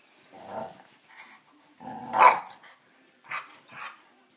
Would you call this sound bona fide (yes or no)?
yes